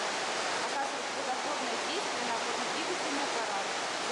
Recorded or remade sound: remade